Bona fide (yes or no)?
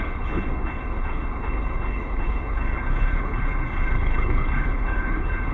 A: no